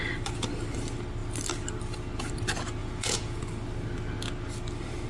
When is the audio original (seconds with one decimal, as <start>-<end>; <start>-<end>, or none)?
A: 0.0-2.8; 3.4-5.1